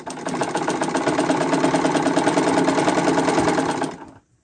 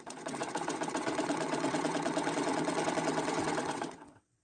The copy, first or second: second